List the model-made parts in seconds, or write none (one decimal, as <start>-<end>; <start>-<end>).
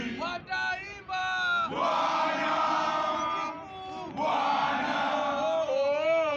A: none